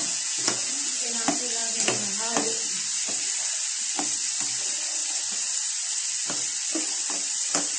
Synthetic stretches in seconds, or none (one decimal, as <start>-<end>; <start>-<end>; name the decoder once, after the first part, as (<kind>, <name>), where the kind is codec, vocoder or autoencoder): 0.0-1.0 (vocoder, Vocos)